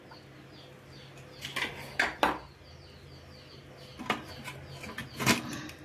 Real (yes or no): yes